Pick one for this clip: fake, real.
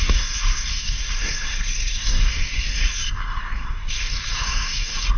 fake